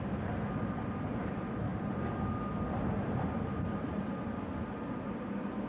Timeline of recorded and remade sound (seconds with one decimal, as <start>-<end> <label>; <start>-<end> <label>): 0.0-5.7 recorded